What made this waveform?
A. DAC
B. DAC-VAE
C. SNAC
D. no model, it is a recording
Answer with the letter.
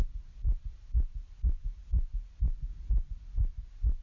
D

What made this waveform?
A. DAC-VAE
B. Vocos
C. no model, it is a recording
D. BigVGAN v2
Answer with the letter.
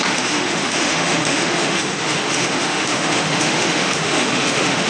A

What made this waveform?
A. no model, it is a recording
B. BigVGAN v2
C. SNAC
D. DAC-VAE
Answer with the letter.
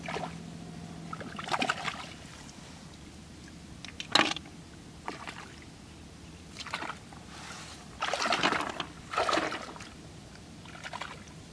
A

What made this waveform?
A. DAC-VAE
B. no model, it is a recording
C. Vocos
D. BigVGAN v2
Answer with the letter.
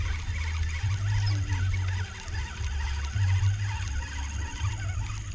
B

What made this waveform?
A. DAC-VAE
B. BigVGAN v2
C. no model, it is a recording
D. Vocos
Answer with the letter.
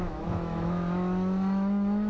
A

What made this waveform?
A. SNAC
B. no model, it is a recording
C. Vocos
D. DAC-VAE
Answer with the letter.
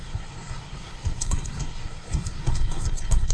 A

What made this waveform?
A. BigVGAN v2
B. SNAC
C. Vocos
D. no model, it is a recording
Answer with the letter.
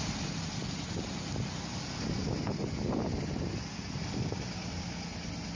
D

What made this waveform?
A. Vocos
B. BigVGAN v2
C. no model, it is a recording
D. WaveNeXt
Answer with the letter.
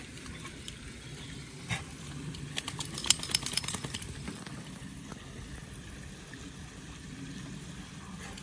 C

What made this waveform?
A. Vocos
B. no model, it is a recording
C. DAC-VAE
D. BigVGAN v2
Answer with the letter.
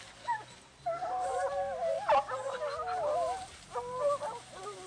B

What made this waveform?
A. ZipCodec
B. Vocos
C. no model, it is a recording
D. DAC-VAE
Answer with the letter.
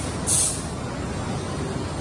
C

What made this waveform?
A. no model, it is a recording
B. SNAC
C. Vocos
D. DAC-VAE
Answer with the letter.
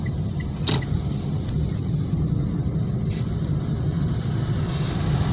A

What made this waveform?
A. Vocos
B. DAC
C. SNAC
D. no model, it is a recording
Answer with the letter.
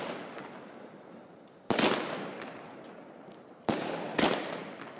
D